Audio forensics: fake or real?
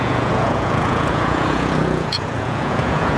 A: fake